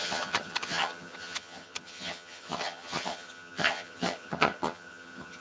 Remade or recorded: remade